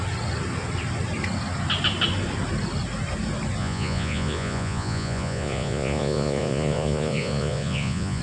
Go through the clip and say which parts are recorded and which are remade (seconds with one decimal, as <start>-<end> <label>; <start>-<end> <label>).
0.0-3.6 recorded; 3.6-8.2 remade